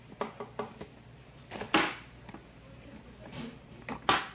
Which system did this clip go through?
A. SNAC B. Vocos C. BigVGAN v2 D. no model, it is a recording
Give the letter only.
D